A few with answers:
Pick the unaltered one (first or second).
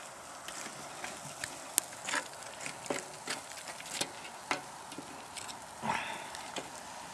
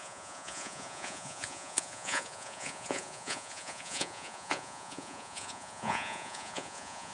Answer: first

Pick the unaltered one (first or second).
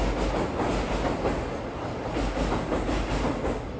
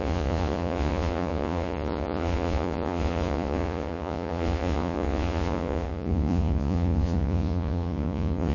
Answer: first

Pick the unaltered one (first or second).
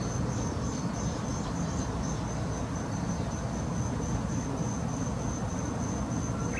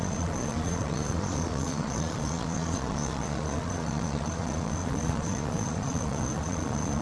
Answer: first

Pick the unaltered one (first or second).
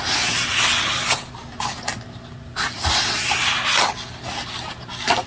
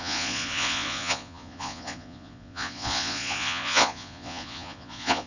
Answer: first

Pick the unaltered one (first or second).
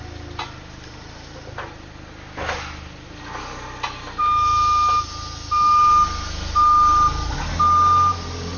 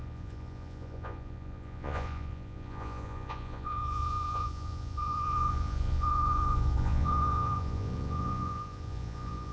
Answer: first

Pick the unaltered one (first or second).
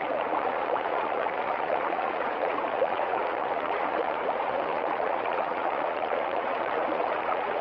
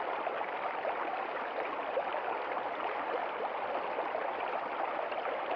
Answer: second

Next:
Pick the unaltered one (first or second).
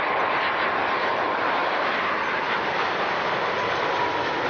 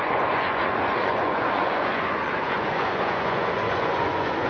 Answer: first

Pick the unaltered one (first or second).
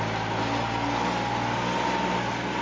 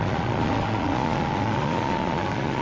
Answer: first